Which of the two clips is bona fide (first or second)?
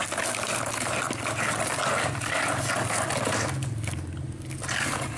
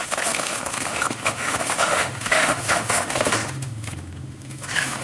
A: first